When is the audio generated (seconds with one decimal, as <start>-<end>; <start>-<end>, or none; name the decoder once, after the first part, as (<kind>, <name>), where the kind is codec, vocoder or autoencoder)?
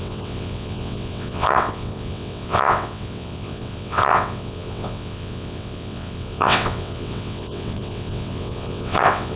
0.0-9.4 (vocoder, WaveNeXt)